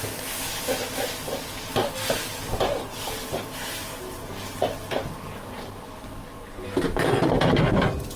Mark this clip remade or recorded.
recorded